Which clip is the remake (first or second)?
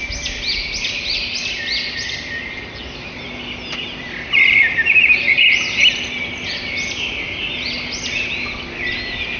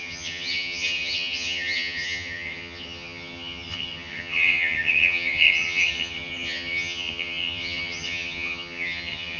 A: second